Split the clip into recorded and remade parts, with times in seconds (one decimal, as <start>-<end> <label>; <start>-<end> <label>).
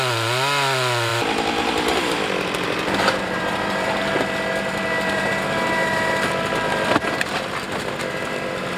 0.0-1.1 recorded; 1.1-4.0 remade; 4.0-8.8 recorded